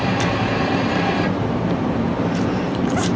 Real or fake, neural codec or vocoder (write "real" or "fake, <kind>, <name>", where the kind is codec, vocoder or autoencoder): fake, vocoder, BigVGAN v2